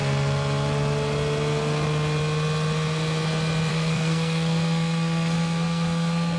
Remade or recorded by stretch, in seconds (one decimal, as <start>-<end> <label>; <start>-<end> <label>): 0.0-3.7 recorded; 3.7-6.4 remade